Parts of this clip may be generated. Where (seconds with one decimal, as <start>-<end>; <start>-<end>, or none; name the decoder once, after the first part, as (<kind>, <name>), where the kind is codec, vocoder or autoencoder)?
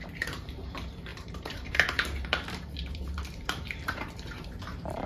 0.0-5.1 (vocoder, BigVGAN v2)